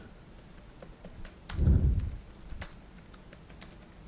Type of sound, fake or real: real